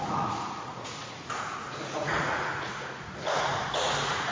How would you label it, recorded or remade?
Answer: remade